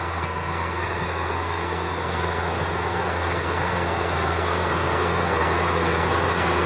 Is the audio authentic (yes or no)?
no